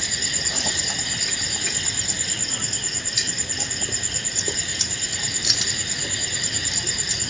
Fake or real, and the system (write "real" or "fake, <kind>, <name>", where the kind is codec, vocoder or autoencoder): real